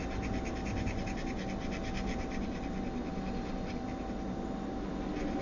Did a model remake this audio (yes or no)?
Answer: no